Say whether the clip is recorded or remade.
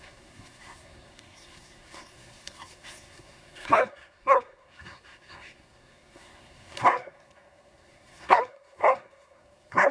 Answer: remade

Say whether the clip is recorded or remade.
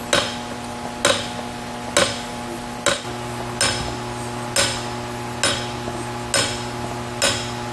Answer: recorded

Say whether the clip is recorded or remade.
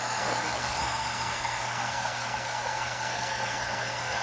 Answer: remade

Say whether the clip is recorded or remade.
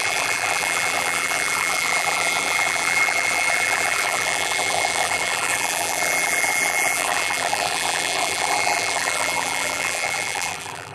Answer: remade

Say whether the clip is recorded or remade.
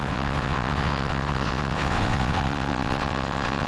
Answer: remade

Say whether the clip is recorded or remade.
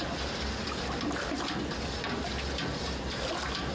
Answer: recorded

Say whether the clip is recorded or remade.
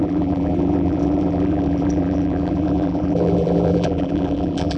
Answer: remade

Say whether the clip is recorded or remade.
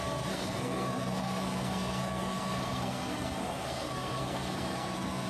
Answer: remade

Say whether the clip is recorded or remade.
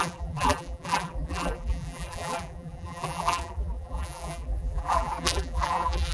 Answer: remade